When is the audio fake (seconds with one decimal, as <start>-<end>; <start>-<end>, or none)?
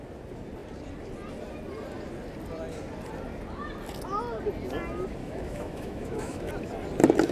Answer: 5.2-6.5